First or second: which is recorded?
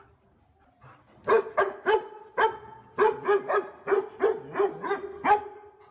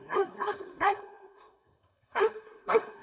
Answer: first